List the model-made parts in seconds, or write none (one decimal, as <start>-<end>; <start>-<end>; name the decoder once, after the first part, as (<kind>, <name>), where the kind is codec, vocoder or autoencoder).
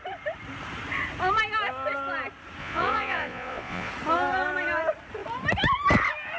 2.6-3.9 (vocoder, Vocos)